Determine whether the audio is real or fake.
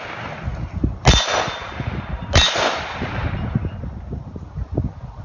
real